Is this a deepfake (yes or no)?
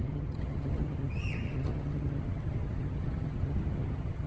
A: yes